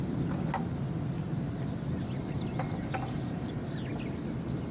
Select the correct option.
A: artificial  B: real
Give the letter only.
B